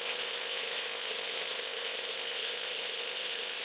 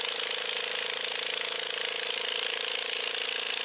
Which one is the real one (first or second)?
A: second